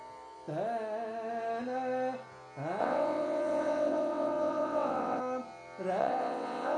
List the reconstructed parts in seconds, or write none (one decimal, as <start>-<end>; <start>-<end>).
2.8-5.2; 6.0-6.8